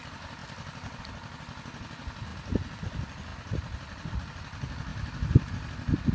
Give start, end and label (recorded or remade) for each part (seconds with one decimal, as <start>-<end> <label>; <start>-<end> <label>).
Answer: 0.0-4.9 recorded; 4.9-5.5 remade; 5.5-6.1 recorded